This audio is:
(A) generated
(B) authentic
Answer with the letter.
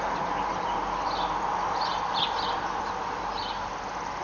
B